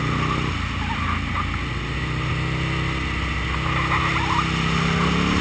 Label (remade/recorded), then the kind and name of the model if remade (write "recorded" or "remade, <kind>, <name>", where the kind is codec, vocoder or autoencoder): recorded